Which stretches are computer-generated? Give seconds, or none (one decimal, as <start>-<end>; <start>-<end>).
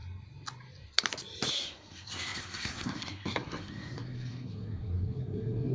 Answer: 1.5-5.7